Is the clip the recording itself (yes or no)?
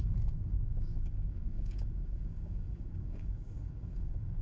no